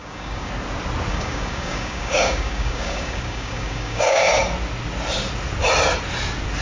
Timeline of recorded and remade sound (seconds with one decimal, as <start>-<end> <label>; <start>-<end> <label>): 0.0-0.5 remade; 0.5-1.1 recorded; 1.1-4.3 remade; 4.3-6.6 recorded